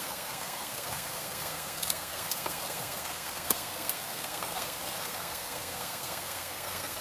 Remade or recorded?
remade